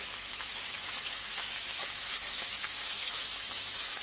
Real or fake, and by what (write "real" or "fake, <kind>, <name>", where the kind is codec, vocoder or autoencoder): fake, autoencoder, DAC-VAE